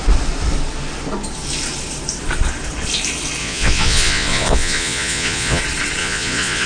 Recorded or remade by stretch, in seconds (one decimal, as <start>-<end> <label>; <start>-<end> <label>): 0.0-3.4 recorded; 3.4-5.6 remade; 5.6-6.0 recorded; 6.0-6.7 remade